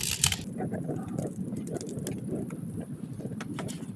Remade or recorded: recorded